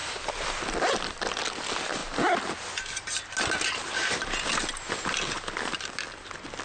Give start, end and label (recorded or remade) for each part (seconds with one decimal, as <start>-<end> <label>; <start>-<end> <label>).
0.0-6.6 recorded